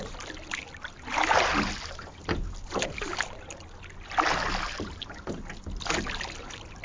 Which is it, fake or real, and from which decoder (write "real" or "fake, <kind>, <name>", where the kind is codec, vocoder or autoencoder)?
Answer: real